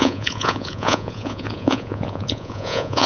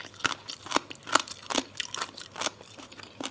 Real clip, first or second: second